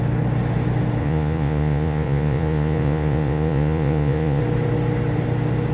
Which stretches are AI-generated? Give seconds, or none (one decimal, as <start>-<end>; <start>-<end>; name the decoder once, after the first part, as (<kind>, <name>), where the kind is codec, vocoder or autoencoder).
1.0-4.4 (vocoder, Vocos)